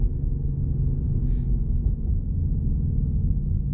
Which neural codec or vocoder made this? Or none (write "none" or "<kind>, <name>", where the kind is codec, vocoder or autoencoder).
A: none